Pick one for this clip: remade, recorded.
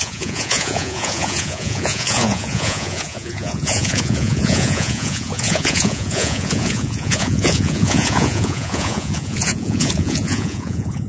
remade